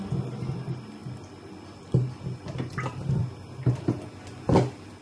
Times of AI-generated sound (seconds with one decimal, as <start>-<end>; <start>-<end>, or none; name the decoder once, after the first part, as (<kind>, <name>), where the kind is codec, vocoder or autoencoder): none